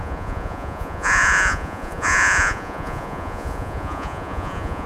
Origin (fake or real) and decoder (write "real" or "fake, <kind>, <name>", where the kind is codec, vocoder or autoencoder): fake, vocoder, Vocos